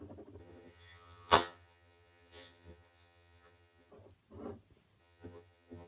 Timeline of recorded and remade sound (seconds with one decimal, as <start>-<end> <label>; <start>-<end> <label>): 0.0-0.4 recorded; 0.4-3.9 remade; 3.9-5.0 recorded; 5.0-5.9 remade

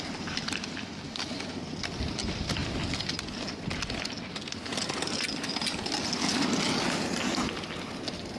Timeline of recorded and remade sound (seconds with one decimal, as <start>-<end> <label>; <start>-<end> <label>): 0.0-8.4 recorded

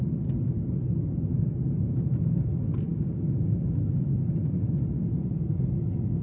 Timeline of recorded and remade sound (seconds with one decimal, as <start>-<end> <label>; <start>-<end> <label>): 0.0-2.9 recorded; 2.9-4.1 remade; 4.1-6.2 recorded

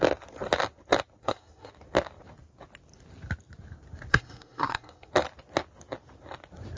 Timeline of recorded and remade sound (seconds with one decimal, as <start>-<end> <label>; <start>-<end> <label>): 0.0-1.2 recorded; 1.2-1.7 remade; 1.7-4.1 recorded; 4.1-5.1 remade; 5.1-6.8 recorded

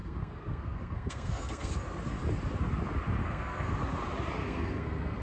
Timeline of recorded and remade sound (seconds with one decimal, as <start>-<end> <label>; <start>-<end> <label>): 0.0-1.7 remade; 1.7-3.2 recorded; 3.2-3.7 remade; 3.7-4.4 recorded; 4.4-5.2 remade

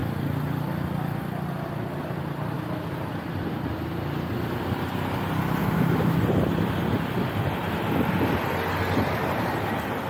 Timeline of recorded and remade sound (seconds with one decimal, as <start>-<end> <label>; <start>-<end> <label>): 0.0-5.6 recorded; 5.6-6.2 remade; 6.2-10.1 recorded